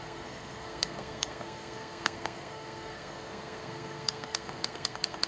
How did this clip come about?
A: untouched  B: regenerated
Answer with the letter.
B